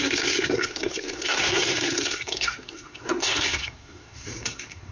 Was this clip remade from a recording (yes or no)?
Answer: yes